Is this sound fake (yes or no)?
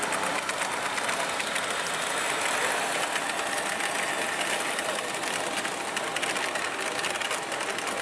no